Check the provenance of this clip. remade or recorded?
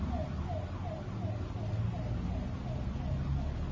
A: recorded